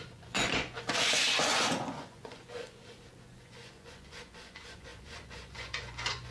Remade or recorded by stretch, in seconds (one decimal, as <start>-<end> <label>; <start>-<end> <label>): 0.0-6.3 remade